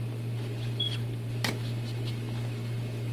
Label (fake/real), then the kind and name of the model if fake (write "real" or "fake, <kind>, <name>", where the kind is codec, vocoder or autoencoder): real